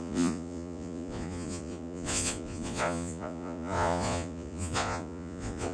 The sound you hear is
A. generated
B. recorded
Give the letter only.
A